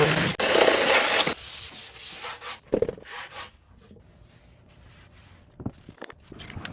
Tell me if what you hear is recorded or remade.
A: recorded